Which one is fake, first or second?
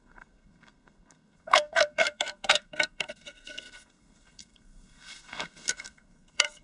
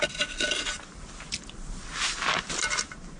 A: first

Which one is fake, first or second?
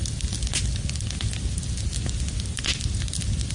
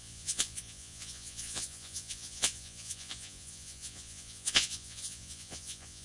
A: second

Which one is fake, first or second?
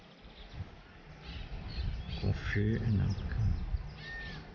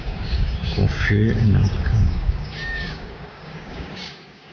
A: second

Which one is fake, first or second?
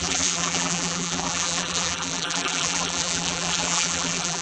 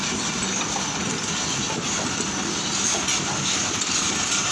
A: first